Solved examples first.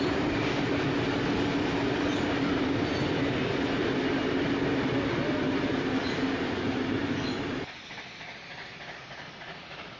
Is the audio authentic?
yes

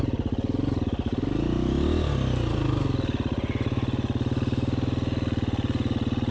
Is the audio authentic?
yes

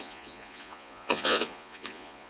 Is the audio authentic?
no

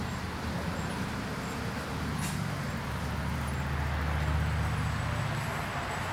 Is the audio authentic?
yes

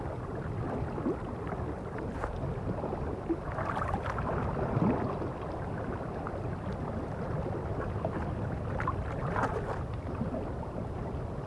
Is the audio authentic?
yes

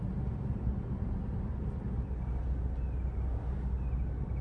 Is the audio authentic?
yes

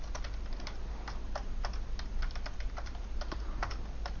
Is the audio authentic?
yes